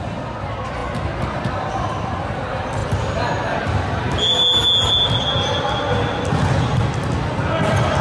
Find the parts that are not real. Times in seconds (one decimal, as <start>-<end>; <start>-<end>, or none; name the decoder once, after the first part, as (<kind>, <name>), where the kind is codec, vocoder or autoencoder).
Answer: none